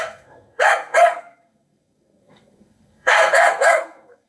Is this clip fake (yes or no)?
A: yes